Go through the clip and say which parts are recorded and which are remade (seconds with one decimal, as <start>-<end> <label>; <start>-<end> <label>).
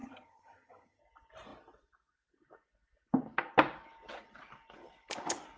0.0-1.0 remade; 1.0-5.6 recorded